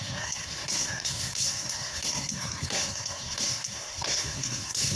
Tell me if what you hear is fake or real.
fake